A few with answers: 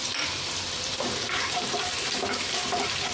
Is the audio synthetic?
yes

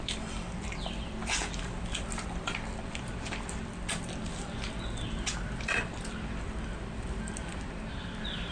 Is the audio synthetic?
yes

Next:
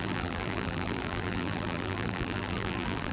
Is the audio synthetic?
yes